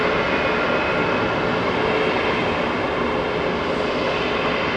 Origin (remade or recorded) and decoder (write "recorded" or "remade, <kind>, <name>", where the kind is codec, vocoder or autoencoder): recorded